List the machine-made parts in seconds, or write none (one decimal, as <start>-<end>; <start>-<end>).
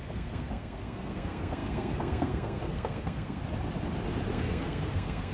0.0-3.4; 4.3-5.3